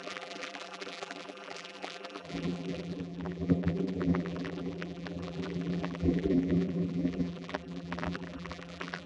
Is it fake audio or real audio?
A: fake